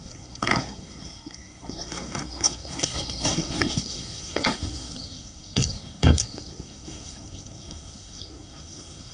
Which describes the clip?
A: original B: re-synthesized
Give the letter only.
B